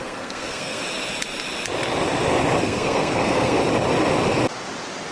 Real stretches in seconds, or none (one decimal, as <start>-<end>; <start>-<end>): 0.8-2.6; 3.6-5.1